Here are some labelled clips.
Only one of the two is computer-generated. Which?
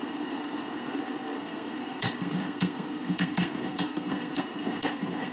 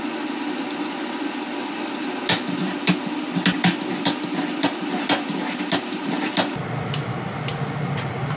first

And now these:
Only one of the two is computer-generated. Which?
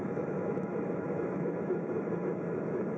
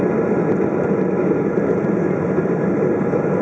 first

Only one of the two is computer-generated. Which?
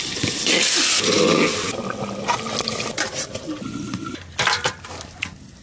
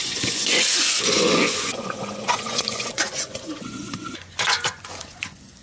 second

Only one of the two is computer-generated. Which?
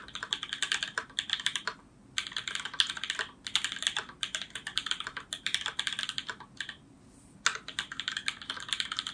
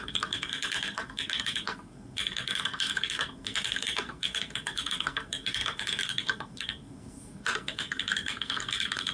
second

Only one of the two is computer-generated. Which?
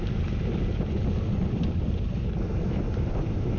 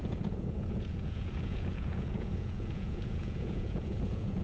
second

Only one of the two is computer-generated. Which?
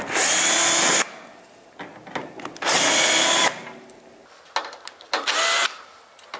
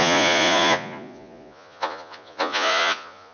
second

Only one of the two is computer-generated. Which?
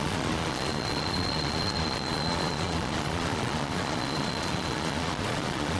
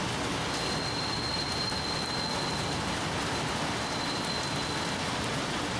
first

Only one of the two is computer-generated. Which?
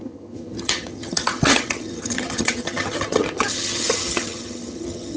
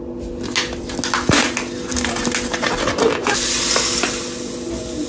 first